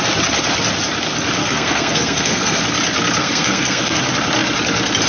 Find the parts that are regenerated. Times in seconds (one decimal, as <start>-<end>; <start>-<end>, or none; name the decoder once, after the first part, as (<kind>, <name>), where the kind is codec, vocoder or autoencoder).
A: 1.4-2.6 (codec, SNAC); 3.2-4.0